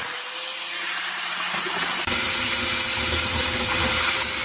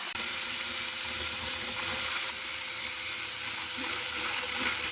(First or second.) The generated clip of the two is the second